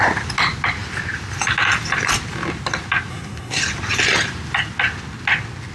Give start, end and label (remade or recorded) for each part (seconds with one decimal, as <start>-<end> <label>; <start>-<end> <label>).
0.0-3.1 recorded; 3.1-3.6 remade; 3.6-5.7 recorded